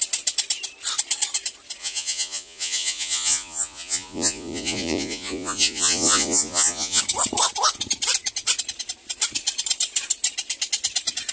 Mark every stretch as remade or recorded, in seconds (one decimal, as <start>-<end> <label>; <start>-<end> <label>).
0.0-1.8 recorded; 1.8-7.0 remade; 7.0-11.3 recorded